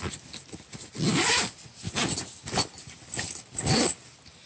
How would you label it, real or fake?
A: real